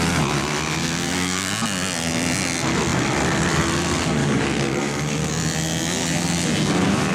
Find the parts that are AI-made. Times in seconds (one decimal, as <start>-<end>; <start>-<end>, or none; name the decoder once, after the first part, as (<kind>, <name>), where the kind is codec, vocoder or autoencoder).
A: 0.8-1.5 (codec, DAC); 4.2-5.3